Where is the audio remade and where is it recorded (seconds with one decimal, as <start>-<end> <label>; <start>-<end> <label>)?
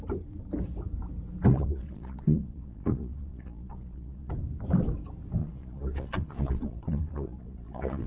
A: 0.0-1.5 recorded; 1.5-4.3 remade; 4.3-5.4 recorded; 5.4-8.1 remade